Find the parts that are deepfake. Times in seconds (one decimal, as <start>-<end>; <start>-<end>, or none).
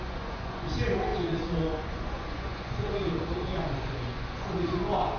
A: 0.0-5.2